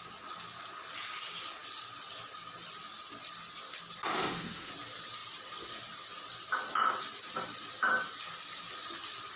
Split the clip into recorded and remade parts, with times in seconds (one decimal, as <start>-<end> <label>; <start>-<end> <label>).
0.0-4.1 recorded; 4.1-4.7 remade; 4.7-9.4 recorded